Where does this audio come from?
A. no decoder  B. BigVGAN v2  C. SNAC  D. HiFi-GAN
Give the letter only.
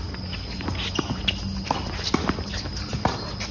A